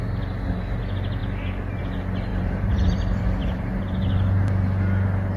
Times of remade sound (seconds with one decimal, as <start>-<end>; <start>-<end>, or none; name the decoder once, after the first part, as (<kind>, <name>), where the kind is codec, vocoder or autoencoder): 2.3-3.8 (vocoder, BigVGAN v2)